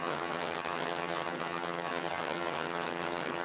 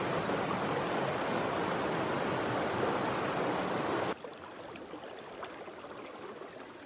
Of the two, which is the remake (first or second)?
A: first